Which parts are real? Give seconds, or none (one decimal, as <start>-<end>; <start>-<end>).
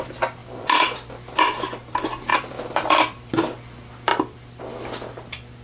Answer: 0.0-0.4; 1.1-2.3; 3.3-4.1; 4.6-5.6